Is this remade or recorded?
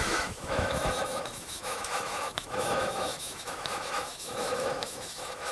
remade